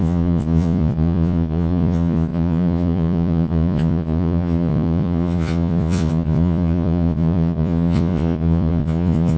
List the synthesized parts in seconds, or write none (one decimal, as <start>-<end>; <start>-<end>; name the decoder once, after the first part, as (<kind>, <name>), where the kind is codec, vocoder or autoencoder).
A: 0.0-9.4 (vocoder, Vocos)